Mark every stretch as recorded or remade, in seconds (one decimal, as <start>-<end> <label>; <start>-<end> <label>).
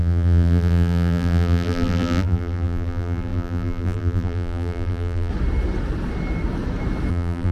0.0-5.3 remade; 5.3-7.1 recorded; 7.1-7.5 remade